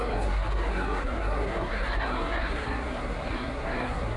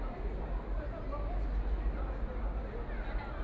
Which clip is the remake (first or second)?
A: first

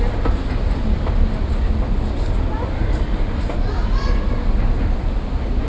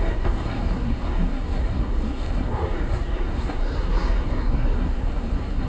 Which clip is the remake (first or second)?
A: second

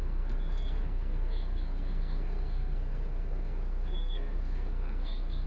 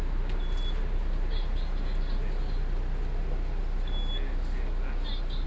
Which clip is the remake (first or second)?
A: first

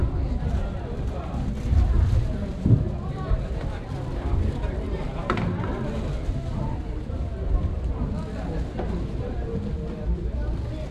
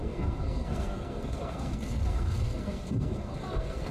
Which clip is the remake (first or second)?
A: second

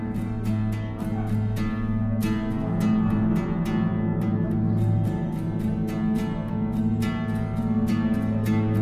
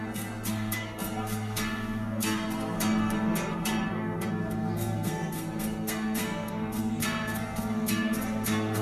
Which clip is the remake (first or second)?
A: second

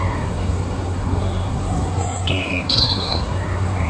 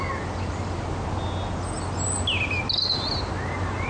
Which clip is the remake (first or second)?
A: first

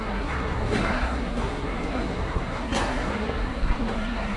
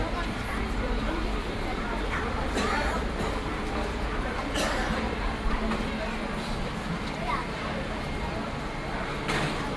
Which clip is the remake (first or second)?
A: first